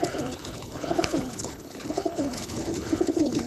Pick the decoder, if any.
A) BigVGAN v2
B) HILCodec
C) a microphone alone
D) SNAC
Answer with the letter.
B